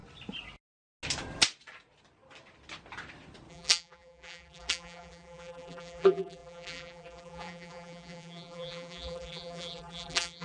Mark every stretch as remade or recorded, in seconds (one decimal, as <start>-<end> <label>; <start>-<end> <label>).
0.0-3.5 recorded; 3.5-10.4 remade

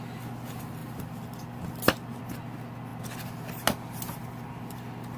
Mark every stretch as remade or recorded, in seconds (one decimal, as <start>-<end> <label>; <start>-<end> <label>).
0.0-0.8 recorded; 0.8-2.2 remade; 2.2-5.2 recorded

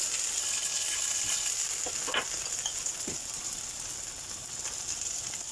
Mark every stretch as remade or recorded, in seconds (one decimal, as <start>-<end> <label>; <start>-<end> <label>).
0.0-0.4 recorded; 0.4-1.5 remade; 1.5-5.5 recorded

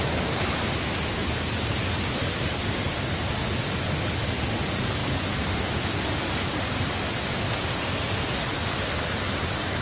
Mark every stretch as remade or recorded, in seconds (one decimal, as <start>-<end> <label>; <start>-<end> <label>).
0.0-1.2 recorded; 1.2-2.9 remade; 2.9-9.8 recorded

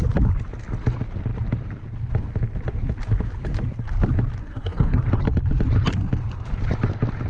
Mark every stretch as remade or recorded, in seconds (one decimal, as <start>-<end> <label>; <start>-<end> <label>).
0.0-4.4 recorded; 4.4-5.0 remade; 5.0-7.3 recorded

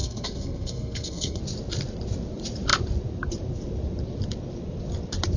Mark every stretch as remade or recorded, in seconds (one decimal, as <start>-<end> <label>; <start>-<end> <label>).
0.0-1.4 remade; 1.4-5.4 recorded

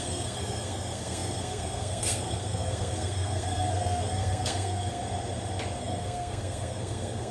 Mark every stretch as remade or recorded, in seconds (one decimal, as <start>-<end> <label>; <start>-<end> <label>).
0.0-5.0 remade; 5.0-5.8 recorded; 5.8-7.3 remade